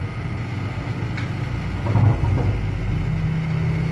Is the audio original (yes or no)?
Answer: yes